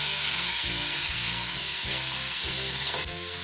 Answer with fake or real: fake